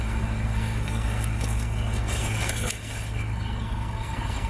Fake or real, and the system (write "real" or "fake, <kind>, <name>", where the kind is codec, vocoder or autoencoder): fake, codec, SNAC